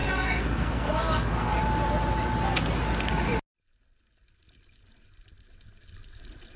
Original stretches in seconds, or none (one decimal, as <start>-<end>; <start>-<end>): 1.6-6.6